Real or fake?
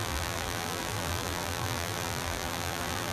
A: fake